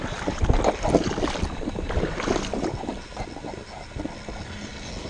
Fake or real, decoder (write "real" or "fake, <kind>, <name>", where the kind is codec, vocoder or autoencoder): real